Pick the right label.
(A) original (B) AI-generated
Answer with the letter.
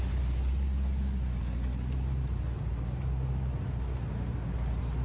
A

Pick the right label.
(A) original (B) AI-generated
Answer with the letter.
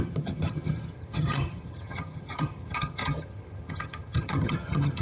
B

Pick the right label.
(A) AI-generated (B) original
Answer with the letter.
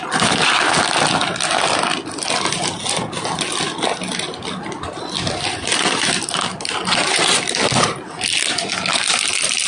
B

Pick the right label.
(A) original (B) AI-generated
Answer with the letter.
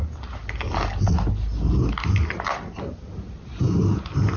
A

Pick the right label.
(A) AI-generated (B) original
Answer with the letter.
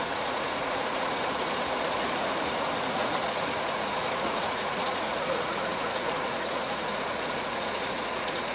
A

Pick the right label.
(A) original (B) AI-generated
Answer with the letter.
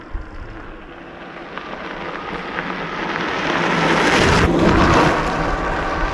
A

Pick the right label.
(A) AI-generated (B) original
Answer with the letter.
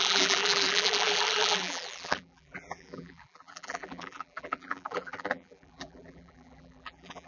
A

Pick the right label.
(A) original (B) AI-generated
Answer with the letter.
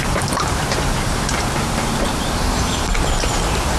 B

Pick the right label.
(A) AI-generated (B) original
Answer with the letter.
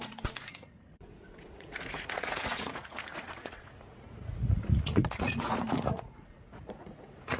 A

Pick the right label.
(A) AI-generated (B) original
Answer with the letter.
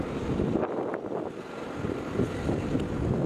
A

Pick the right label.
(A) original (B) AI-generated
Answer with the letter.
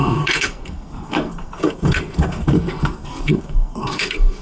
B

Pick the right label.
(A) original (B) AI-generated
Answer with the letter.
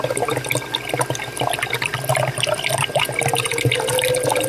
A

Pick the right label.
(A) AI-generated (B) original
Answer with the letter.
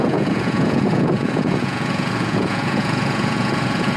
A